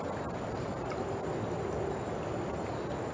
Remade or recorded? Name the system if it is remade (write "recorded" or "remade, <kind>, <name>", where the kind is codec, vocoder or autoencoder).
recorded